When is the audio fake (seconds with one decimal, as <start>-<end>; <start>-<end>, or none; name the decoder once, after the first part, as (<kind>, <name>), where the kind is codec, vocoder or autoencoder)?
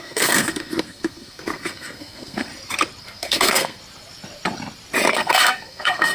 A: 0.0-2.5 (codec, SNAC); 3.0-3.8; 5.1-6.1